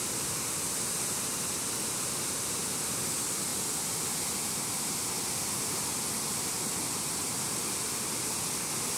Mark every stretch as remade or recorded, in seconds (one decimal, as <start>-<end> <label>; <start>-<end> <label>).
0.0-9.0 recorded